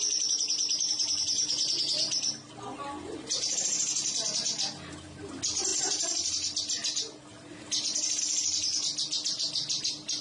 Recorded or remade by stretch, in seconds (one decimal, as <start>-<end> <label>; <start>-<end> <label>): 0.0-10.2 recorded

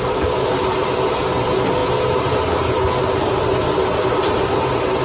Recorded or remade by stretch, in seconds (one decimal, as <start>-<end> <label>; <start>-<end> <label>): 0.0-5.0 recorded

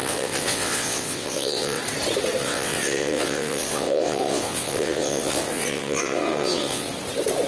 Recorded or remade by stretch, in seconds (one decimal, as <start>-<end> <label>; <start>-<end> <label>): 0.0-1.8 remade; 1.8-2.4 recorded; 2.4-6.9 remade; 6.9-7.5 recorded

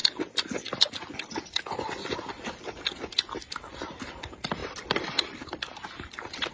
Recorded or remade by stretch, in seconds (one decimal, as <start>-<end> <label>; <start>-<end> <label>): 0.0-3.1 remade; 3.1-4.6 recorded; 4.6-6.5 remade

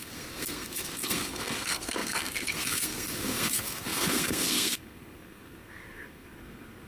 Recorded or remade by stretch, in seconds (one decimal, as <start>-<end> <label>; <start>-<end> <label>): 0.0-6.9 remade

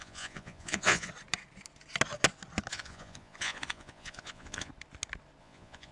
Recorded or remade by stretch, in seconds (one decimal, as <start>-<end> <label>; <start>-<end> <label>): 0.0-1.1 remade; 1.1-2.7 recorded; 2.7-4.7 remade; 4.7-5.4 recorded; 5.4-5.9 remade

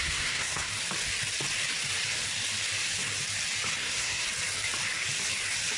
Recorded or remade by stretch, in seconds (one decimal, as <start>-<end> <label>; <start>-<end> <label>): 0.0-0.7 remade; 0.7-3.8 recorded; 3.8-4.2 remade; 4.2-5.8 recorded